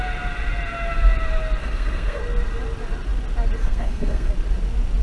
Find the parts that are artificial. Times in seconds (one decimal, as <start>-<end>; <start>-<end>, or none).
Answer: 1.6-2.2; 3.6-4.3